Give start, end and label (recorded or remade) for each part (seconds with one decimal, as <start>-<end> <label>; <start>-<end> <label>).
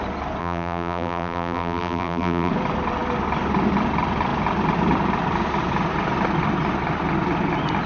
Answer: 0.0-0.4 recorded; 0.4-2.5 remade; 2.5-7.9 recorded